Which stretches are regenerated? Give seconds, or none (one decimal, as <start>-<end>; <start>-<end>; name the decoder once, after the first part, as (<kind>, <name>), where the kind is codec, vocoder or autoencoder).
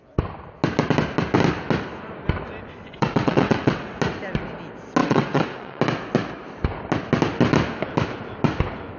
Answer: 2.9-4.0 (vocoder, WaveNeXt); 5.0-5.8